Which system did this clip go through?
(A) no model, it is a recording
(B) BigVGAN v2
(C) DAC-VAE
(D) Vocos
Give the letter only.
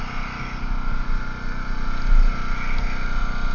A